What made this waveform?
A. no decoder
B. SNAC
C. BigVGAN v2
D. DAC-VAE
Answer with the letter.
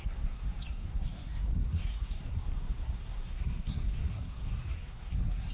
B